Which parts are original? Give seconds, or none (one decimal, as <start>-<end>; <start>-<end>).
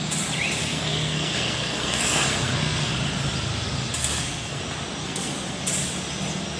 0.0-0.6; 2.9-4.0; 4.6-5.0; 5.6-6.6